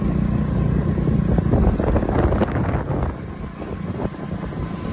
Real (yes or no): yes